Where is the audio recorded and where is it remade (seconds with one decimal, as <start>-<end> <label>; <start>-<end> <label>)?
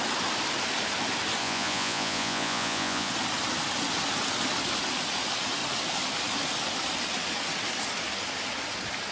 0.0-1.4 recorded; 1.4-3.1 remade; 3.1-9.1 recorded